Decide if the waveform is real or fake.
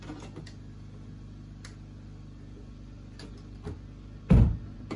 real